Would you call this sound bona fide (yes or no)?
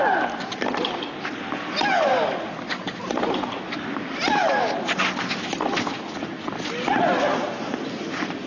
yes